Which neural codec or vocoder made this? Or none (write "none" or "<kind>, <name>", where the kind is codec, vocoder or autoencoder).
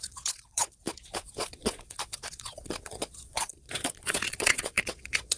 vocoder, Vocos